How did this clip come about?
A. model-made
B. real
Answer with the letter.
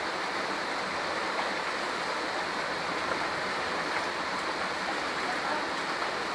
B